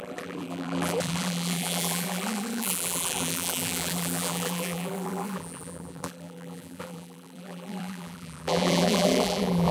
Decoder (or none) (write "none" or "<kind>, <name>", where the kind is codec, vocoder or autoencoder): vocoder, BigVGAN v2